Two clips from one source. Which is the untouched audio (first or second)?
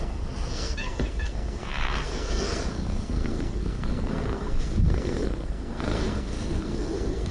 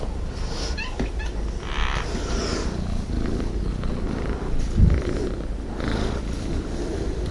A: second